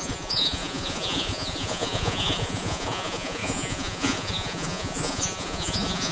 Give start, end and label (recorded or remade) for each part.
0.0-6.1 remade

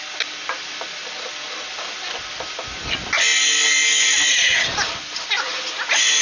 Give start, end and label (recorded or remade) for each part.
0.0-6.2 recorded

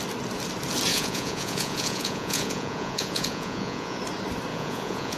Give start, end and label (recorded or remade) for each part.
0.0-0.9 recorded; 0.9-4.0 remade; 4.0-4.5 recorded; 4.5-5.2 remade

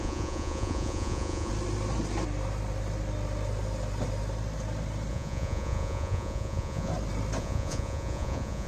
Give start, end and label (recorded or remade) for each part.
0.0-1.5 remade; 1.5-5.1 recorded; 5.1-6.9 remade; 6.9-7.4 recorded; 7.4-8.7 remade

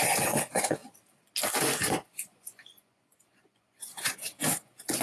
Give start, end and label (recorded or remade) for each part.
0.0-0.8 remade; 0.8-1.5 recorded; 1.5-5.0 remade